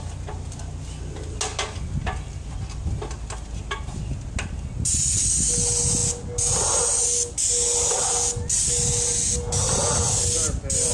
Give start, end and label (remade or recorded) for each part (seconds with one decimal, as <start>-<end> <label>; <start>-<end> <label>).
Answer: 0.0-10.9 recorded